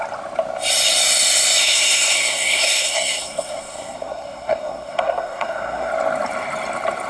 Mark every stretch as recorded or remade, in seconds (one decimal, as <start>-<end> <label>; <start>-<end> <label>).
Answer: 0.0-1.6 recorded; 1.6-5.9 remade; 5.9-7.1 recorded